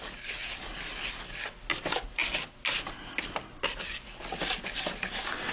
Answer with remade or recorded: recorded